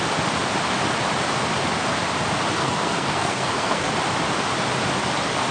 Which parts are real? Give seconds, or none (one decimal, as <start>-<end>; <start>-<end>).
0.0-2.6; 3.9-5.5